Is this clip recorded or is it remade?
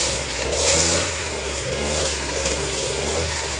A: remade